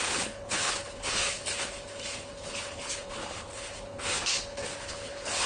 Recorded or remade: remade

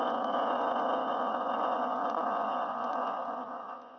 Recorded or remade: remade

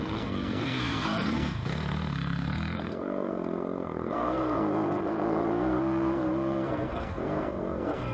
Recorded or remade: remade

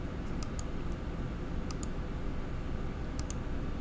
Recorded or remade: recorded